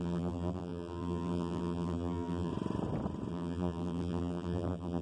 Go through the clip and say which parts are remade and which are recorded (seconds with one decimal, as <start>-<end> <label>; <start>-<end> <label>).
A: 0.0-2.5 remade; 2.5-3.3 recorded; 3.3-5.0 remade